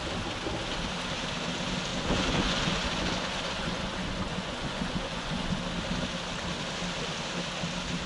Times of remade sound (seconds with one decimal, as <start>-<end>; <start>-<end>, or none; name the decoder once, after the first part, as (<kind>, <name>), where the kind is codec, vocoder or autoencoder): 1.9-5.6 (vocoder, Vocos)